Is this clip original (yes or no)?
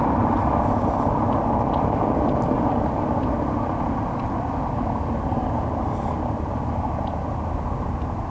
yes